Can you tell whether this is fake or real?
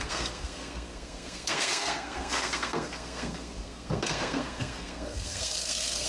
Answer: fake